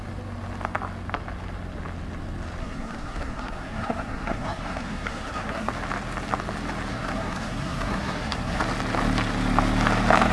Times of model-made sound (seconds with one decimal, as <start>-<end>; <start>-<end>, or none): 2.6-5.7; 6.9-8.6